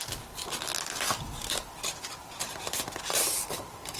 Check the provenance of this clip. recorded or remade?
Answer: remade